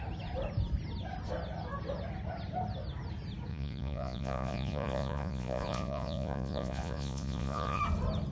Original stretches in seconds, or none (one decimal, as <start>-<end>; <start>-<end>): 0.0-3.5; 7.8-8.3